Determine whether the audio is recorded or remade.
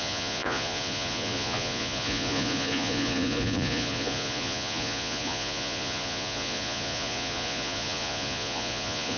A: remade